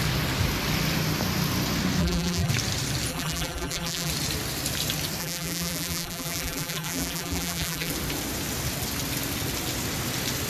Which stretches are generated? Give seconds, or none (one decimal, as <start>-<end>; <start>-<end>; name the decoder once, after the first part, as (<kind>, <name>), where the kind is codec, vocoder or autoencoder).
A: 2.0-2.5 (vocoder, BigVGAN v2); 3.1-4.1; 5.2-7.9